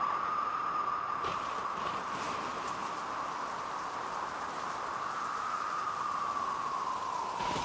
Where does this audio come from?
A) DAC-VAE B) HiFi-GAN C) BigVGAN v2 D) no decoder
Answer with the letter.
C